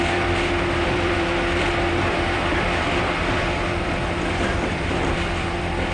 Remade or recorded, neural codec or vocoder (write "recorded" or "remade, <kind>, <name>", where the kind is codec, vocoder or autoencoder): remade, vocoder, BigVGAN v2